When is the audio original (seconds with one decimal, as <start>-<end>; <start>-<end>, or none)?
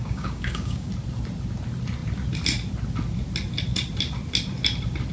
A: 0.9-5.1